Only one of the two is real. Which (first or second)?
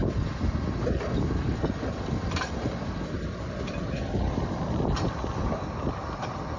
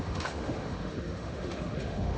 first